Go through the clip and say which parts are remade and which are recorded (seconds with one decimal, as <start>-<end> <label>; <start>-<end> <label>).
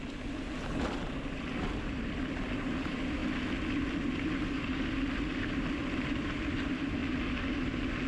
0.0-3.2 remade; 3.2-4.5 recorded; 4.5-5.8 remade; 5.8-6.3 recorded; 6.3-7.0 remade; 7.0-8.1 recorded